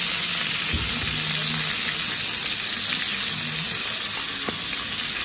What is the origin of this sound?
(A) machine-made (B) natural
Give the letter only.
B